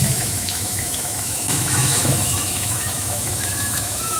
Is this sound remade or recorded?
remade